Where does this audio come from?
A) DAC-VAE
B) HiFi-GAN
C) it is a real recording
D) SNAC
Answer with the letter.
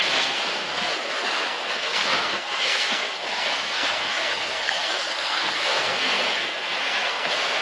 D